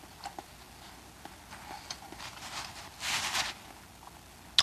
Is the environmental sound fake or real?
real